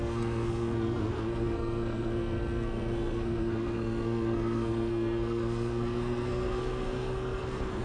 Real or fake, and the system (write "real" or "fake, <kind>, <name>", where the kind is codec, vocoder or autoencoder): fake, codec, SNAC